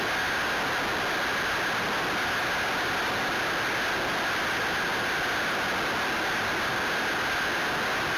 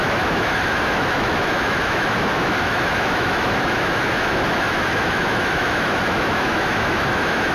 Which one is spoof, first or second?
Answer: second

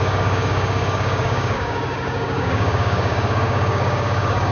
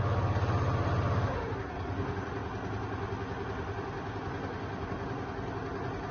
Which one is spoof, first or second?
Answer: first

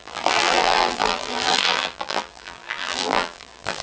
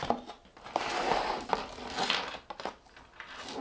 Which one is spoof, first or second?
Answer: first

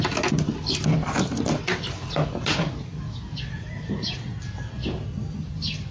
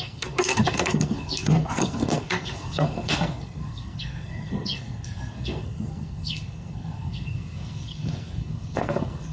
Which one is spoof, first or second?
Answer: second